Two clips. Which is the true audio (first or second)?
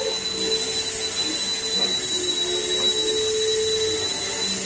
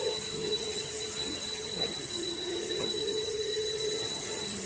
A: first